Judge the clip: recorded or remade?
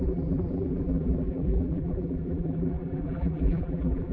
remade